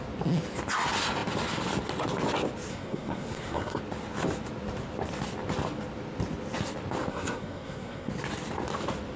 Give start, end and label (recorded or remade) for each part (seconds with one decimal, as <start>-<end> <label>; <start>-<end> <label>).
0.0-2.7 recorded; 2.7-3.8 remade; 3.8-7.1 recorded; 7.1-8.1 remade; 8.1-9.2 recorded